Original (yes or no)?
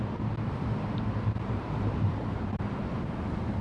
no